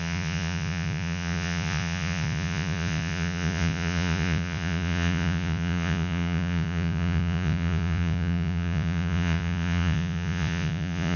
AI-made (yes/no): yes